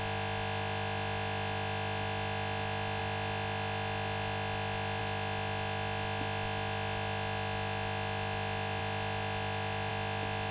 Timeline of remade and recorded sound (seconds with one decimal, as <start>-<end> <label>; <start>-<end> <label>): 0.0-10.5 recorded